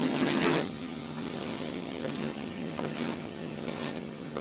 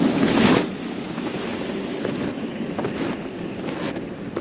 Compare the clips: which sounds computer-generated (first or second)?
first